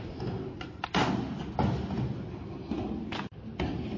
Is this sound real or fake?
real